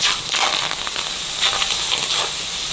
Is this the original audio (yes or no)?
yes